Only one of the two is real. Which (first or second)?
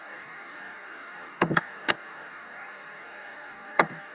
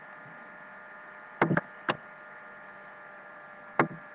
second